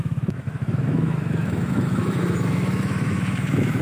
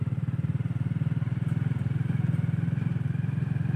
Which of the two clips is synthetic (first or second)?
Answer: first